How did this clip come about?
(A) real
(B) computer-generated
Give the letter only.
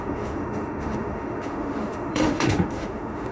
B